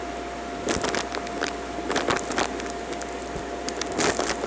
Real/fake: real